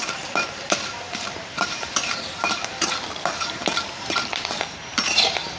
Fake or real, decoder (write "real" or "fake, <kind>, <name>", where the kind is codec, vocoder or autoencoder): fake, vocoder, BigVGAN v2